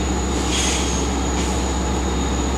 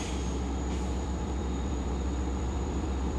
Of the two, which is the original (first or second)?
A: first